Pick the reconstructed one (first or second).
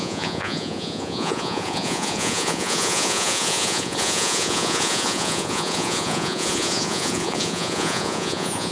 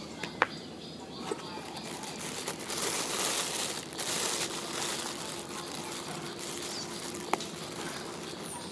first